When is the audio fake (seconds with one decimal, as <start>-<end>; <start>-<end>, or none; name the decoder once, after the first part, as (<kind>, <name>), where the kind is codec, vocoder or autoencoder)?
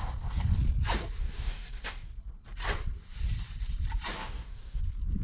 1.2-2.1 (codec, DAC); 4.2-4.8